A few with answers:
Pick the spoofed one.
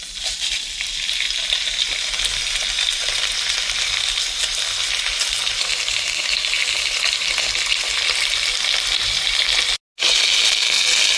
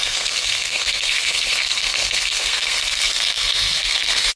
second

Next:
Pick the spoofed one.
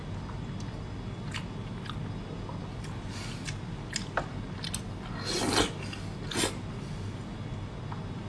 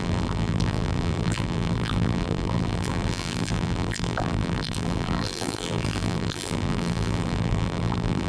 second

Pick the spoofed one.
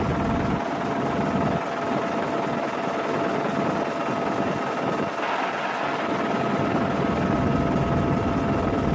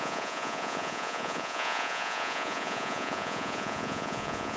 second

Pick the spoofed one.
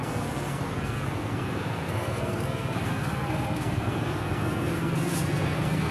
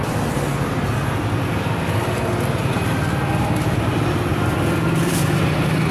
first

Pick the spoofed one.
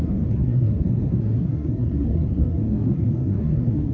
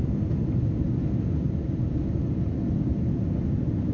first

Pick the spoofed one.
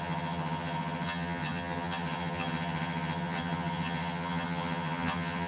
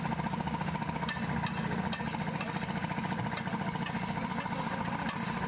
first